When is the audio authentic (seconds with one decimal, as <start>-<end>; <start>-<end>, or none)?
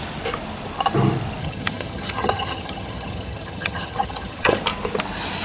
0.0-1.4; 4.6-5.4